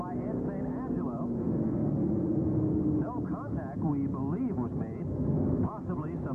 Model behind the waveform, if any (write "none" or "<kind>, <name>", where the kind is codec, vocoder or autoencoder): none